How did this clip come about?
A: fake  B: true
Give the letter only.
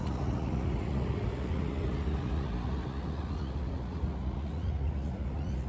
A